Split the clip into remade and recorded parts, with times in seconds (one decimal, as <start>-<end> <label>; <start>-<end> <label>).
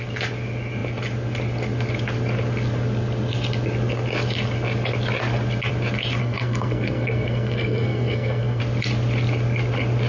0.0-6.2 recorded; 6.2-8.6 remade; 8.6-10.1 recorded